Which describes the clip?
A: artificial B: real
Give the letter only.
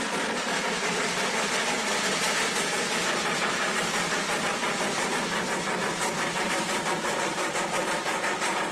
A